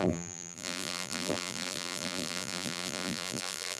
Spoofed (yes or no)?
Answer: yes